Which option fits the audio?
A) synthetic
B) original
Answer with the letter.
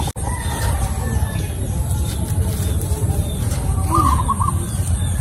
B